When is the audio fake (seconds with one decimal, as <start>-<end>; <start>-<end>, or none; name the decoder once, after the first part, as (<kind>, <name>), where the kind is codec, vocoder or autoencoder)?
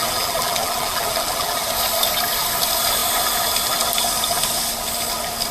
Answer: 0.0-1.6 (vocoder, BigVGAN v2)